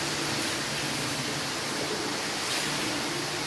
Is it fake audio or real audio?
real